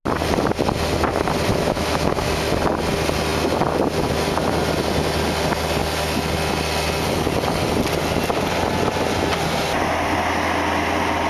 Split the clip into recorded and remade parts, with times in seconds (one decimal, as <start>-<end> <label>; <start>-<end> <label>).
0.0-1.5 recorded; 1.5-2.3 remade; 2.3-11.3 recorded